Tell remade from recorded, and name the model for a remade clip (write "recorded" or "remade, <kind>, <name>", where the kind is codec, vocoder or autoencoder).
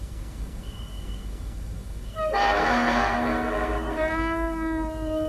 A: remade, codec, SNAC